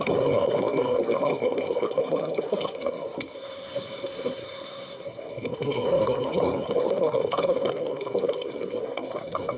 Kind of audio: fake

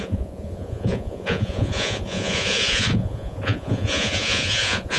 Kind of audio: fake